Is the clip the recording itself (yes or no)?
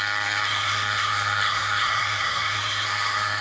no